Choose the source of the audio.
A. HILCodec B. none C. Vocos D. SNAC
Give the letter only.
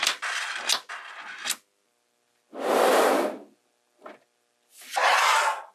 B